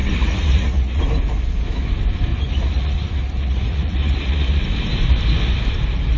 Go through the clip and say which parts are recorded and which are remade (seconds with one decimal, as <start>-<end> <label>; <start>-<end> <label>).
0.0-1.0 remade; 1.0-2.3 recorded; 2.3-4.6 remade; 4.6-6.2 recorded